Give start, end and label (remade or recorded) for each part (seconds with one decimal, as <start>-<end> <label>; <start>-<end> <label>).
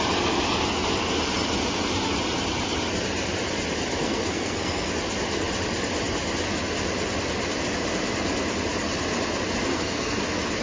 0.0-4.0 recorded; 4.0-4.9 remade; 4.9-9.7 recorded; 9.7-10.2 remade; 10.2-10.6 recorded